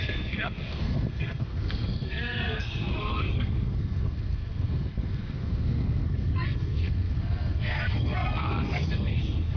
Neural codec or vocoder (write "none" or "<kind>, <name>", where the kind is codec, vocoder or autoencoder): codec, SNAC